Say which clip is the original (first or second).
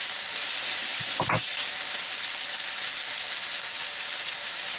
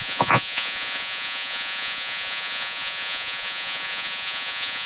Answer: first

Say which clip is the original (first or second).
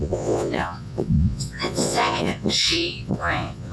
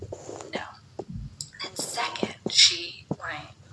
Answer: second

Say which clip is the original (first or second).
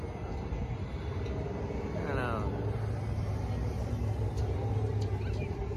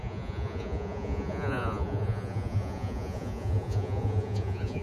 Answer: first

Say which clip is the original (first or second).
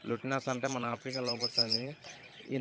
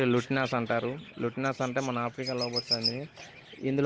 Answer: second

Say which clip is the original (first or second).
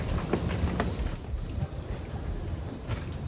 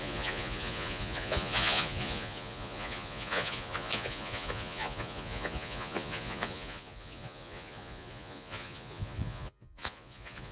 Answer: first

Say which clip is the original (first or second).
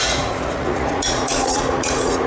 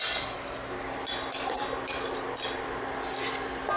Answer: second